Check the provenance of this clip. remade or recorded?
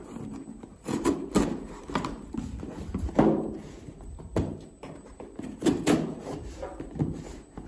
remade